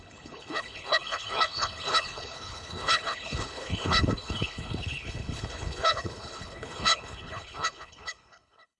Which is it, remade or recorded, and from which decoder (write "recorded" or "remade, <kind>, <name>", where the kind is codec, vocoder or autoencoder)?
remade, codec, HILCodec